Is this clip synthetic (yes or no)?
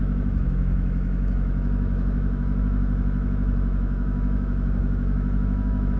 yes